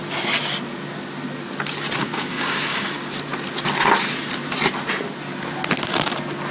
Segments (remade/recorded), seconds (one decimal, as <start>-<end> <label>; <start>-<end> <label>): 0.0-2.0 recorded; 2.0-2.9 remade; 2.9-6.5 recorded